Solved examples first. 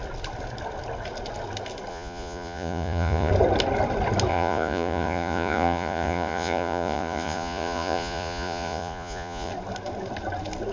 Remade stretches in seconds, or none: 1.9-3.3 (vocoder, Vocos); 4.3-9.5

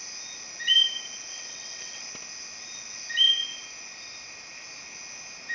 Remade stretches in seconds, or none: 1.3-2.0 (vocoder, WaveNeXt)

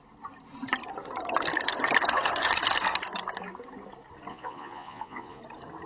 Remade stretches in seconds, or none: 4.3-5.4 (vocoder, Vocos)

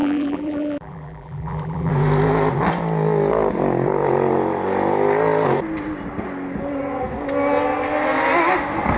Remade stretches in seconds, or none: 0.0-1.9 (vocoder, BigVGAN v2)

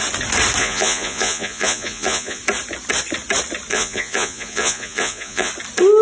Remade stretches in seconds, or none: 0.6-2.4 (vocoder, Vocos); 3.7-5.5

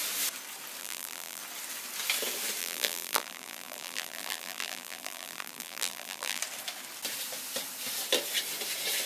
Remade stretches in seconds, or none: 0.8-1.4 (vocoder, BigVGAN v2); 2.6-6.4